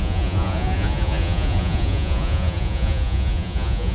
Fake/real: fake